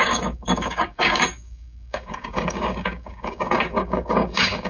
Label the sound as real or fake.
fake